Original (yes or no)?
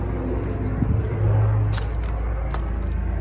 yes